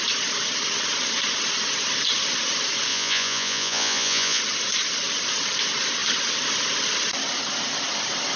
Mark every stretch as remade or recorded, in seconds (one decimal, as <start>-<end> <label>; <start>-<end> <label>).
0.0-2.9 recorded; 2.9-4.4 remade; 4.4-8.4 recorded